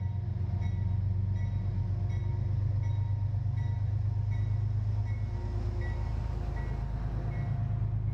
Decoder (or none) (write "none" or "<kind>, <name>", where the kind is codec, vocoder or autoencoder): none